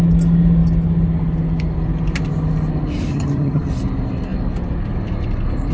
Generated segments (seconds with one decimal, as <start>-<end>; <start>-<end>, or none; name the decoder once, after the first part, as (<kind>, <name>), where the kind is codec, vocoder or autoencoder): 3.1-3.7 (vocoder, HiFi-GAN)